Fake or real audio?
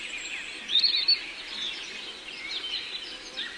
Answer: real